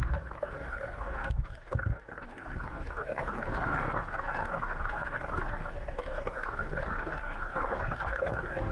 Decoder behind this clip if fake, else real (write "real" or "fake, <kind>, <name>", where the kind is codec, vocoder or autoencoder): fake, codec, DAC